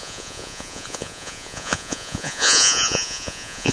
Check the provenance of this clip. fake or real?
fake